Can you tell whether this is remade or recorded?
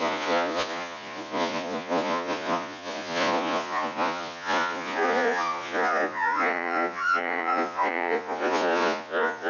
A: remade